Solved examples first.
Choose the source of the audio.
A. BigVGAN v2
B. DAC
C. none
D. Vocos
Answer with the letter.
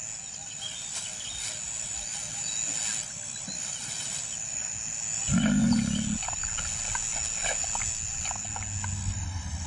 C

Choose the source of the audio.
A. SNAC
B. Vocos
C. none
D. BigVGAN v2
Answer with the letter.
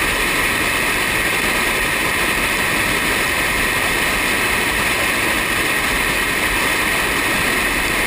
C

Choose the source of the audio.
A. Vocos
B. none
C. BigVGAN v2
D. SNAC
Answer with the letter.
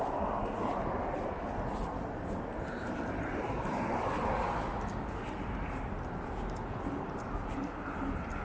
B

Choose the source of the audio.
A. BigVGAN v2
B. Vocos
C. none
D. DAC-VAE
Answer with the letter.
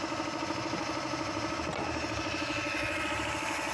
C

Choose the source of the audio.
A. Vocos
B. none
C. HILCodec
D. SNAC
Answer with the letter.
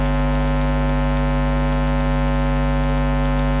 B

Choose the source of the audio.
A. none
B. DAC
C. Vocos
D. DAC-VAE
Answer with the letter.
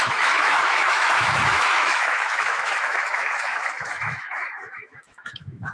D